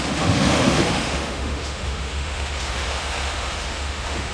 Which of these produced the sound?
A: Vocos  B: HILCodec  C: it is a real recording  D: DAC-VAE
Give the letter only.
D